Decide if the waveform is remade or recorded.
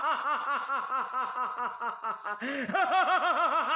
recorded